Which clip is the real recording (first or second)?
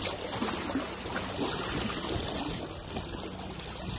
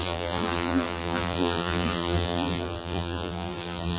first